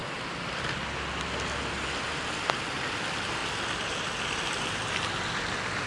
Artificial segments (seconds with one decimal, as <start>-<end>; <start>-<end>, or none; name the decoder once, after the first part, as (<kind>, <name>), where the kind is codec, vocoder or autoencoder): none